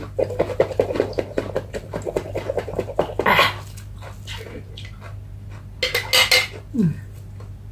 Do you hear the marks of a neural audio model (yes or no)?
no